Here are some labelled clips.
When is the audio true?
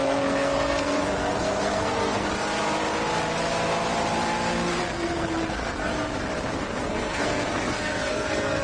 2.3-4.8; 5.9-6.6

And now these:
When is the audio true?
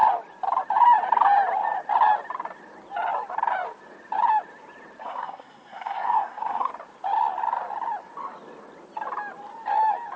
0.0-5.0; 6.7-10.2